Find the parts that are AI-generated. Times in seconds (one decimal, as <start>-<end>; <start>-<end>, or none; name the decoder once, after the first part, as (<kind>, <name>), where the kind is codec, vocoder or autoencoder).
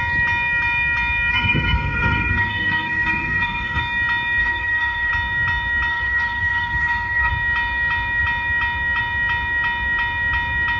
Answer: 1.3-3.8 (codec, SNAC); 4.4-5.1; 5.9-7.3